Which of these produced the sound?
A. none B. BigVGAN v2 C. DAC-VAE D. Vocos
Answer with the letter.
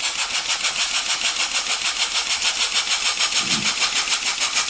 A